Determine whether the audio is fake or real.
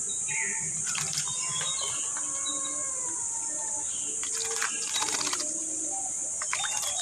real